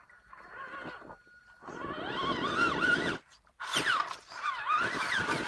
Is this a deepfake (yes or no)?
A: no